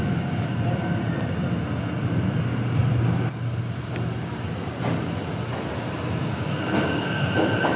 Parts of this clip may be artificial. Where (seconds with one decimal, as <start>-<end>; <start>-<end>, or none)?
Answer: 6.2-7.8